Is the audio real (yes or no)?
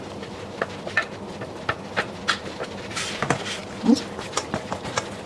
yes